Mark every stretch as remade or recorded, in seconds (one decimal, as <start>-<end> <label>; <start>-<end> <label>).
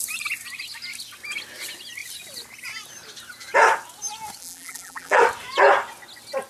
0.0-4.4 recorded; 4.4-5.2 remade; 5.2-6.5 recorded